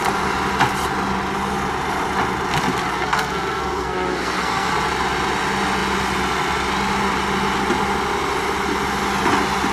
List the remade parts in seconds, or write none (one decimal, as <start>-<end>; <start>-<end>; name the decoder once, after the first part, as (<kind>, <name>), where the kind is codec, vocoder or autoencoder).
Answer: 2.9-4.7 (codec, SNAC)